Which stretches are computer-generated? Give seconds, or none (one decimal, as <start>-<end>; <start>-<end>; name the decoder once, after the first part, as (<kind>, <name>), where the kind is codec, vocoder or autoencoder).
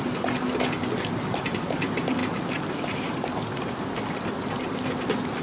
none